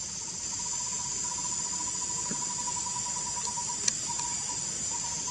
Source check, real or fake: real